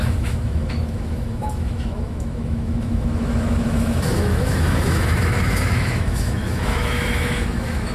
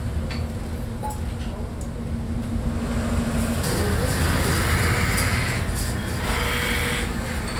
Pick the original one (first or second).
second